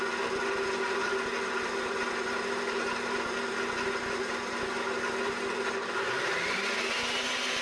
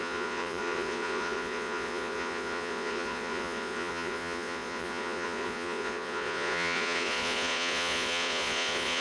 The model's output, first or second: second